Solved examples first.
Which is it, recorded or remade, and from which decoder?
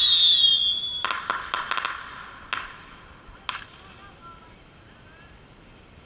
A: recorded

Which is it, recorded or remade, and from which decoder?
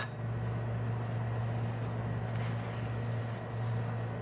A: recorded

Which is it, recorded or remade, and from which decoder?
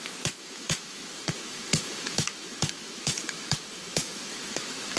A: remade, autoencoder, DAC-VAE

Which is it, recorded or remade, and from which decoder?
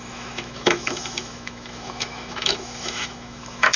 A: remade, autoencoder, DAC-VAE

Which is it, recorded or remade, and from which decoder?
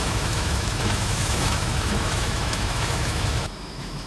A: remade, autoencoder, DAC-VAE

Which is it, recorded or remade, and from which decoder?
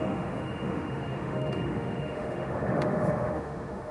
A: remade, autoencoder, DAC-VAE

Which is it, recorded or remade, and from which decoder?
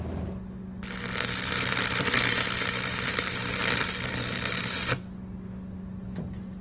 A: recorded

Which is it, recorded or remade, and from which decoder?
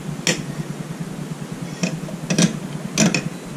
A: recorded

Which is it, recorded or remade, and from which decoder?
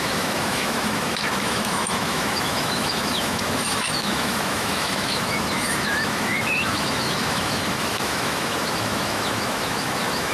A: remade, autoencoder, DAC-VAE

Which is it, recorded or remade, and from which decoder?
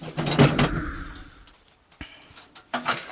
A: recorded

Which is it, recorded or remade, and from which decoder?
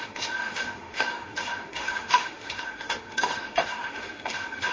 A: remade, autoencoder, DAC-VAE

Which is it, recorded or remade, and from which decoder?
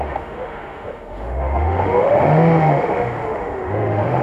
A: remade, autoencoder, DAC-VAE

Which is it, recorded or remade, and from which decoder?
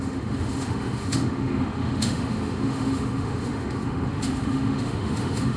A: remade, autoencoder, DAC-VAE